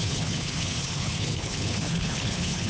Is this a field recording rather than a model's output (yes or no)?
no